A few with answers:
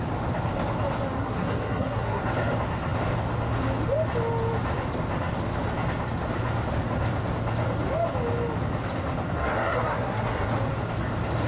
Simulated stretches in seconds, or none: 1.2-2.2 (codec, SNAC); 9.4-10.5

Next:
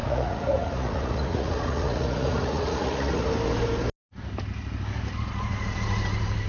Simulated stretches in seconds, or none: 0.0-3.3 (vocoder, Vocos)